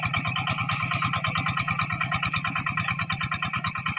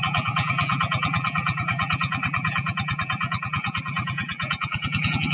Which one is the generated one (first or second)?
second